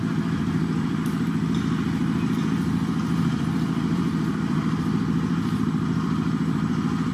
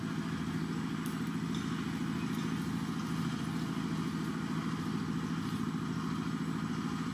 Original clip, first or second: second